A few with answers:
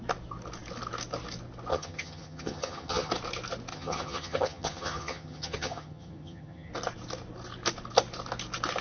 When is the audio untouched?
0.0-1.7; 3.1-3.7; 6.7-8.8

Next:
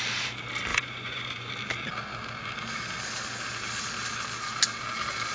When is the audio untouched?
0.0-0.7; 1.5-5.3

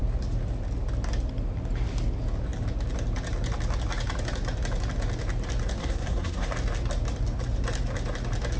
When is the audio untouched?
0.0-5.8; 6.5-8.6

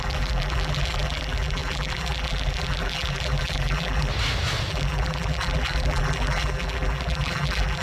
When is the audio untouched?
4.1-4.7

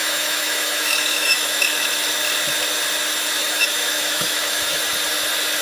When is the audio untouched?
1.9-3.4; 4.8-5.6